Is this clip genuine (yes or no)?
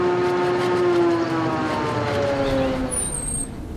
yes